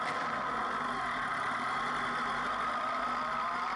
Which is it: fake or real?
real